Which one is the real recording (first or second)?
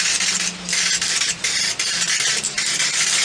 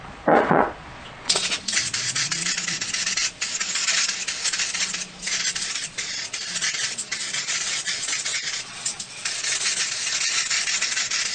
first